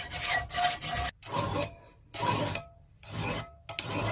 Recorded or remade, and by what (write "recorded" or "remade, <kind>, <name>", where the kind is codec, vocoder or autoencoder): recorded